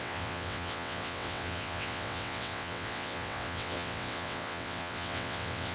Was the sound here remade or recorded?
remade